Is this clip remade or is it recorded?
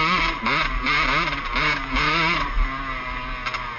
recorded